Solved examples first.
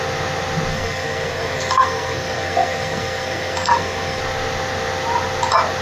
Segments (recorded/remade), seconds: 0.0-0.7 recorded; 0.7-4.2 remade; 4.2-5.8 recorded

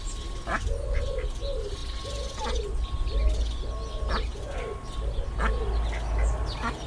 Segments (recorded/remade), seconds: 0.0-6.9 recorded

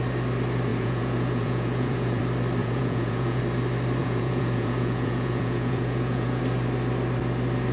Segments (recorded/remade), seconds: 0.0-0.7 recorded; 0.7-2.2 remade; 2.2-2.6 recorded; 2.6-3.4 remade; 3.4-4.0 recorded; 4.0-6.4 remade; 6.4-7.7 recorded